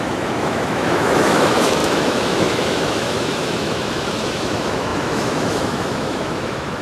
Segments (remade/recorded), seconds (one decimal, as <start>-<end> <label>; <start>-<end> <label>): 0.0-6.8 remade